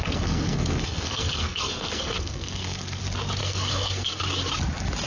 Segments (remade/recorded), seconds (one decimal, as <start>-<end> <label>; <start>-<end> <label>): 0.0-3.0 remade; 3.0-3.4 recorded; 3.4-4.2 remade; 4.2-5.1 recorded